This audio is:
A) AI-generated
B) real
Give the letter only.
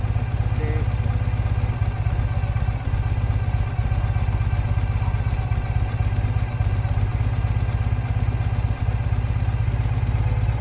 B